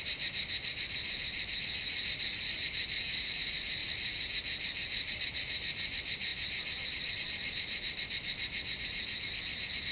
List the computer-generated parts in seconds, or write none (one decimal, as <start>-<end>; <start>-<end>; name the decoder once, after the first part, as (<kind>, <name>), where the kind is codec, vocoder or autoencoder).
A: 0.0-3.8 (vocoder, BigVGAN v2); 5.1-9.9